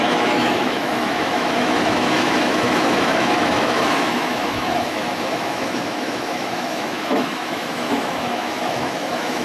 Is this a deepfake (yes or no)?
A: yes